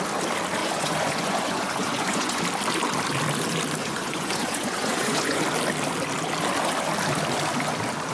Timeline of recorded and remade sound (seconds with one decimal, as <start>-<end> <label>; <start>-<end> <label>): 0.0-0.6 recorded; 0.6-2.4 remade; 2.4-3.8 recorded; 3.8-5.4 remade; 5.4-8.1 recorded